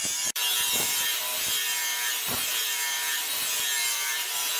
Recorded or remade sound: remade